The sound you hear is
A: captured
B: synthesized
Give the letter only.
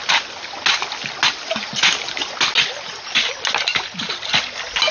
A